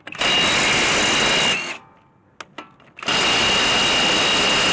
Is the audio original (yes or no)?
yes